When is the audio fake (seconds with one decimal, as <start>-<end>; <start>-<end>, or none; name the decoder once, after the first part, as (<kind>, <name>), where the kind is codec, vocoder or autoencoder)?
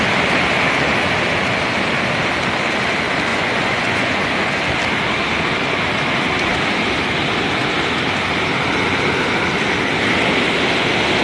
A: 3.3-4.6 (vocoder, Vocos)